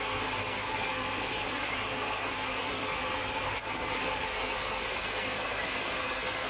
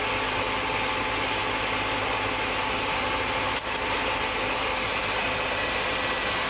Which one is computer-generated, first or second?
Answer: first